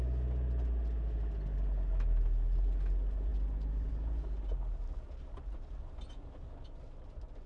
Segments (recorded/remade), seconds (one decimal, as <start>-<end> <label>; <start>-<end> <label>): 0.0-7.5 recorded

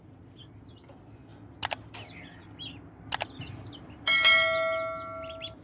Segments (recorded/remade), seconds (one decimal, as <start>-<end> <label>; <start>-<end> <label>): 0.0-5.6 recorded

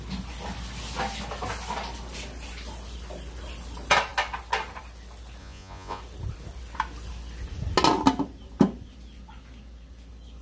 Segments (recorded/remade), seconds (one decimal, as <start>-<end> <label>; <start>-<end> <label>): 0.0-5.4 recorded; 5.4-6.0 remade; 6.0-10.4 recorded

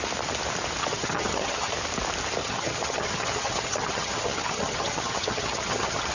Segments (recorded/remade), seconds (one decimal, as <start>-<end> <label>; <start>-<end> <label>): 0.0-0.8 recorded; 0.8-1.7 remade; 1.7-2.4 recorded; 2.4-6.1 remade

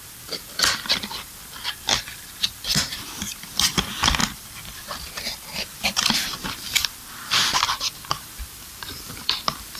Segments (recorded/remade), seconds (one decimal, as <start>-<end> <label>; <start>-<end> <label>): 0.0-9.8 remade